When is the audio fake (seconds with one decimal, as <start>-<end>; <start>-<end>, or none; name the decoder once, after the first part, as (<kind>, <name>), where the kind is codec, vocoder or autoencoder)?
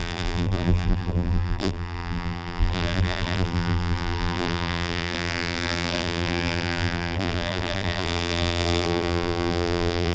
0.0-10.1 (vocoder, BigVGAN v2)